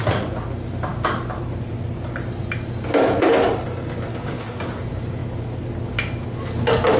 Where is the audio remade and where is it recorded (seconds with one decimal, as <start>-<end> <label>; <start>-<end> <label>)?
0.0-4.1 recorded; 4.1-4.7 remade; 4.7-7.0 recorded